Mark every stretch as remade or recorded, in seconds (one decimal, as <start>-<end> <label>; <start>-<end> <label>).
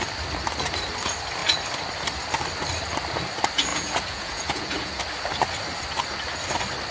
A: 0.0-3.7 recorded; 3.7-5.0 remade; 5.0-6.9 recorded